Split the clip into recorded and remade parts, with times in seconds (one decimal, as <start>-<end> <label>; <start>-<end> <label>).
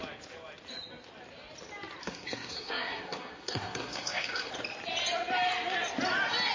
0.0-2.0 recorded; 2.0-4.5 remade; 4.5-6.5 recorded